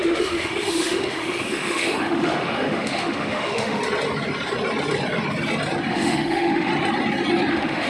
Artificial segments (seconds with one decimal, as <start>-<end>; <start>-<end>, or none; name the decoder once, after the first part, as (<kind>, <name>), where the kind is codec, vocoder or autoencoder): 0.0-3.8 (autoencoder, DAC-VAE); 5.9-6.7; 7.5-7.9

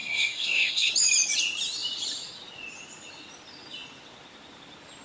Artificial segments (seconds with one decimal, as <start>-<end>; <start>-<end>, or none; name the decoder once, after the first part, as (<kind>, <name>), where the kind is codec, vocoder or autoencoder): 0.0-0.9 (codec, SNAC)

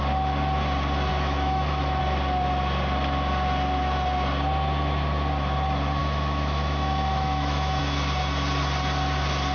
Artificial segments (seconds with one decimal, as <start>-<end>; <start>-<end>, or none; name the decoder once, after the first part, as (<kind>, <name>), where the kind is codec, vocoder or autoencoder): 1.1-2.0 (autoencoder, DAC-VAE); 6.0-7.8

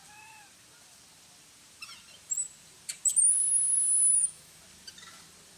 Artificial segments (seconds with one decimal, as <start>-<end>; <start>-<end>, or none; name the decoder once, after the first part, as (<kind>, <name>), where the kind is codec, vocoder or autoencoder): 4.1-4.6 (autoencoder, DAC-VAE)